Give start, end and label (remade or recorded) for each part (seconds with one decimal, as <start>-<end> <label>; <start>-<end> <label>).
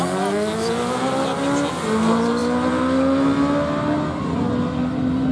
0.0-5.3 recorded